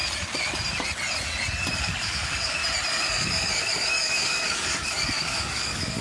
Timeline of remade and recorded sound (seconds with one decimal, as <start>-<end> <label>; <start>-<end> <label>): 0.0-1.8 recorded; 1.8-2.6 remade; 2.6-3.1 recorded; 3.1-6.0 remade